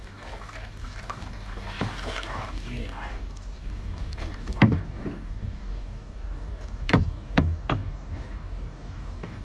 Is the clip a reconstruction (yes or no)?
yes